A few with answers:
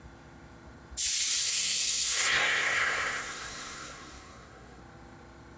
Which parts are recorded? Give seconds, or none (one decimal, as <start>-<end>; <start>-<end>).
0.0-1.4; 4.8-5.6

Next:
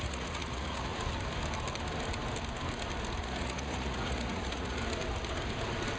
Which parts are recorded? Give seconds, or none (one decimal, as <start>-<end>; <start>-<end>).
0.9-3.2; 4.8-6.0

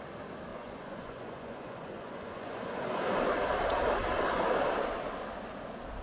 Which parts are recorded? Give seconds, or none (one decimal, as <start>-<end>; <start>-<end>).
0.0-0.5; 3.0-6.0

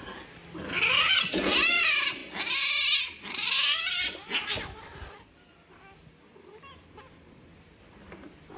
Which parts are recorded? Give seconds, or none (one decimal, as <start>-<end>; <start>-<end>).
0.0-8.6

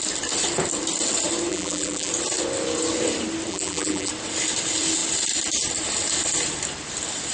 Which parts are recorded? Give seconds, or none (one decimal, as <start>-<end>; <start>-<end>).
0.0-1.5; 2.1-3.5; 4.1-7.3

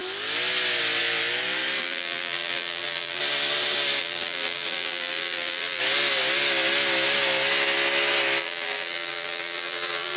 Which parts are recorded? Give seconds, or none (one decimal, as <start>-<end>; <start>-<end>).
0.0-1.8; 3.2-4.0; 5.8-8.4